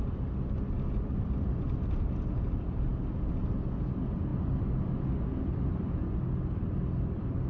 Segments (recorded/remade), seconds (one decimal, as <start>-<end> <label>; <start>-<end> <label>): 0.0-7.5 recorded